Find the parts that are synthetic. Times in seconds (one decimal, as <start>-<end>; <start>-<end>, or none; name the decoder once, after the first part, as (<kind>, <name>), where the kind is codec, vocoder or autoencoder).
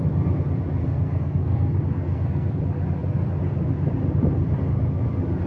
0.8-2.6 (codec, SNAC)